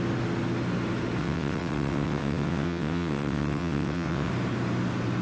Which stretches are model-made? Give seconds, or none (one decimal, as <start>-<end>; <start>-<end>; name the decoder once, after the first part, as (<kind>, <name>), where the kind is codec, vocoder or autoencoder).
1.2-4.3 (vocoder, WaveNeXt)